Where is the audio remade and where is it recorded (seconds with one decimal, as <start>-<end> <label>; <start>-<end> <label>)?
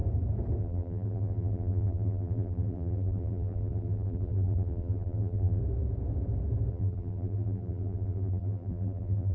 0.0-0.6 recorded; 0.6-5.6 remade; 5.6-6.7 recorded; 6.7-9.3 remade